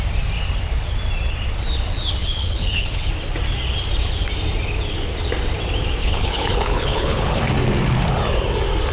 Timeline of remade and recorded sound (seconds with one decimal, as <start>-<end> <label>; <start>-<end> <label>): 0.0-2.2 recorded; 2.2-3.1 remade; 3.1-6.0 recorded; 6.0-7.4 remade; 7.4-8.9 recorded